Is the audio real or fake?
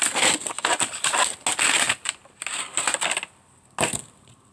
real